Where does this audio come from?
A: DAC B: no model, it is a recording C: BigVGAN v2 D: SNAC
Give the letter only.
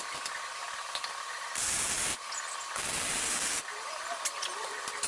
B